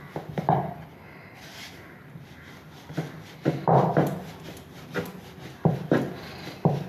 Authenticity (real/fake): real